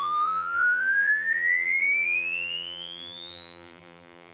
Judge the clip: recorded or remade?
remade